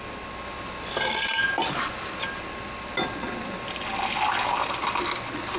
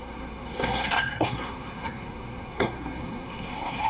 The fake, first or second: second